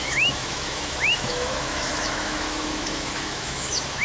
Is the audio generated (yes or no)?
yes